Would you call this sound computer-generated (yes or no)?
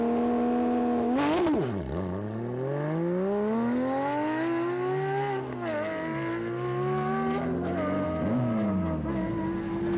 no